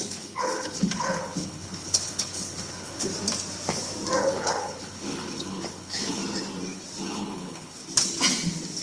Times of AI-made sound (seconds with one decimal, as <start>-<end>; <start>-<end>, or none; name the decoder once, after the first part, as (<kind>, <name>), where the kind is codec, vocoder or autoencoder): 0.0-3.1 (codec, HILCodec); 4.2-6.2; 7.0-7.8